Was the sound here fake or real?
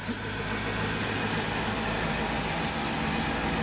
real